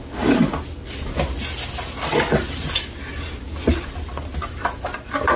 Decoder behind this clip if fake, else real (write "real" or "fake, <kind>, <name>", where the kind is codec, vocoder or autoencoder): real